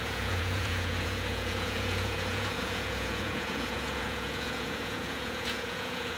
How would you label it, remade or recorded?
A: remade